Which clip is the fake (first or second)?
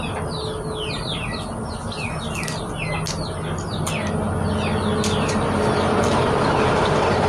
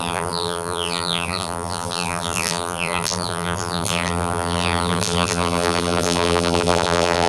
second